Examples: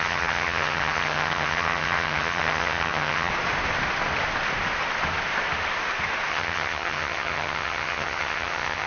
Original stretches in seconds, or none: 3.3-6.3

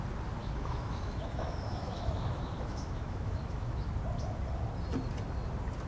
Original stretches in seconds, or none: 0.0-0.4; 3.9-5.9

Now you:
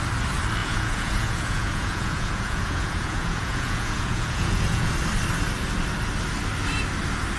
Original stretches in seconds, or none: 0.0-0.6; 4.9-7.4

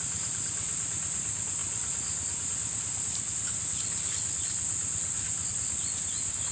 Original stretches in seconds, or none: 0.0-6.5

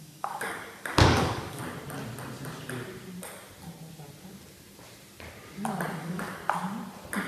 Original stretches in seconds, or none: 1.6-6.0; 6.4-7.3

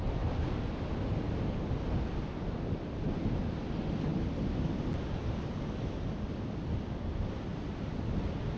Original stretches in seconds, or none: 0.0-8.6